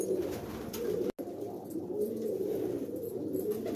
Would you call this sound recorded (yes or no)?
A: yes